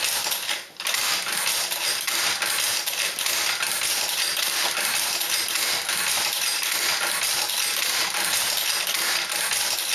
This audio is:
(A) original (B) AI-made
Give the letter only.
A